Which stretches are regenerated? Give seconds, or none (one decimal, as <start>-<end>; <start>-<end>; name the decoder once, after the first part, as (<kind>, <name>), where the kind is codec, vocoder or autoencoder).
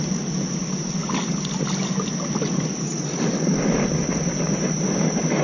none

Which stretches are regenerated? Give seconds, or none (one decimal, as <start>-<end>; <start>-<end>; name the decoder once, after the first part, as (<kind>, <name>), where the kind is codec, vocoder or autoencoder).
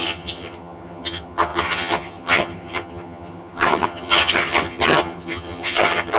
0.0-6.2 (vocoder, HiFi-GAN)